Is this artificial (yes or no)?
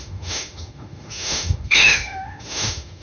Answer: yes